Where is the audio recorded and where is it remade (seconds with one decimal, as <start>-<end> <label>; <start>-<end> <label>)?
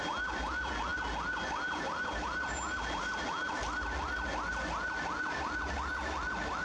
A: 0.0-6.6 recorded